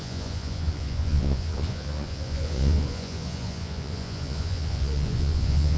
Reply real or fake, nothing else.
fake